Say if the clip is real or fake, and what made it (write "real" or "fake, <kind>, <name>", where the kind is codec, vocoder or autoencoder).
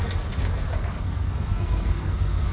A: fake, codec, SNAC